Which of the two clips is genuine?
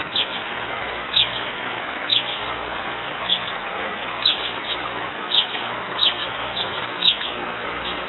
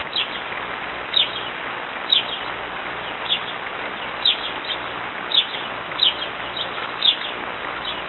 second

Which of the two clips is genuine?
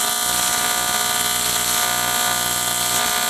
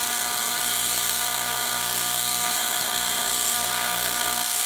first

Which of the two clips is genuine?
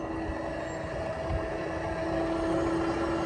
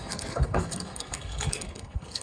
first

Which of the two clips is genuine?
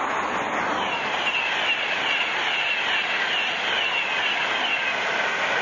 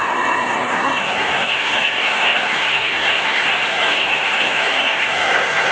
first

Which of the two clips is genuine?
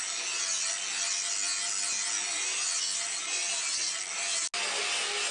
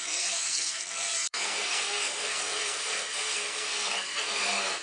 first